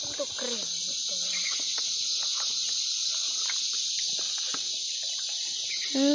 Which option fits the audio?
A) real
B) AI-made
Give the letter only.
A